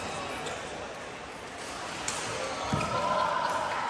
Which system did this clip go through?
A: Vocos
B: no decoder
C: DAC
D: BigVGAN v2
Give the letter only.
B